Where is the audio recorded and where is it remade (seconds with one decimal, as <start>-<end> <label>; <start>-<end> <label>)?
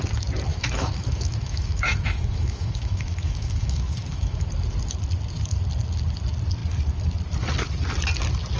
0.0-0.5 recorded; 0.5-4.5 remade; 4.5-8.6 recorded